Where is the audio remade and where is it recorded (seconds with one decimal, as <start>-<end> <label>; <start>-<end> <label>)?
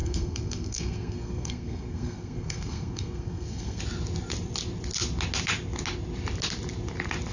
0.0-3.8 remade; 3.8-7.3 recorded